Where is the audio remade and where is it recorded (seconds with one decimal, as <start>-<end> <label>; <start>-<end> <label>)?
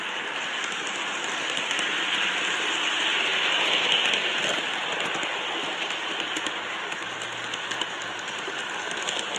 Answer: 0.0-9.4 recorded